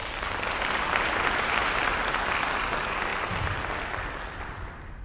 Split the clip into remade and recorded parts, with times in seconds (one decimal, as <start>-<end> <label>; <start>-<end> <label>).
0.0-5.0 recorded